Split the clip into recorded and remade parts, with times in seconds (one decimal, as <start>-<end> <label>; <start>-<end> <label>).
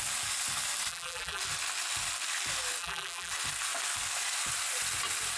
0.0-0.9 recorded; 0.9-1.4 remade; 1.4-2.8 recorded; 2.8-3.3 remade; 3.3-5.4 recorded